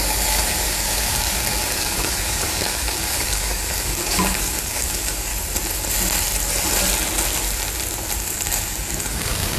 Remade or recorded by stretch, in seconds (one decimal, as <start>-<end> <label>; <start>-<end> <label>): 0.0-5.3 remade; 5.3-8.2 recorded; 8.2-9.6 remade